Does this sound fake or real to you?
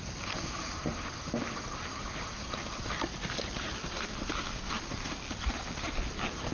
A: real